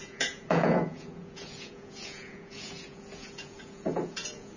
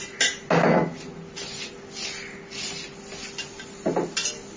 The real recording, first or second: second